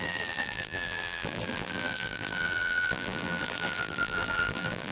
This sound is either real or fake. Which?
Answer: fake